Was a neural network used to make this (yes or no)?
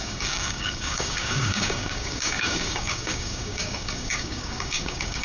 yes